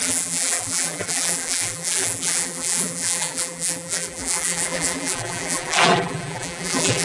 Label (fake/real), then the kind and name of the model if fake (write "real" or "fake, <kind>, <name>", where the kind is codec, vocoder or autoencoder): fake, vocoder, BigVGAN v2